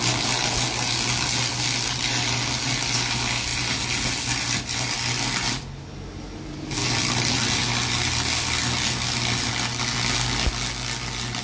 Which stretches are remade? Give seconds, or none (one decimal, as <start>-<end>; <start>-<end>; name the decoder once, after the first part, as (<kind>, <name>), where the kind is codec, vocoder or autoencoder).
none